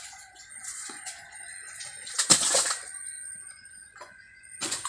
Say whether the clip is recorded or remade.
remade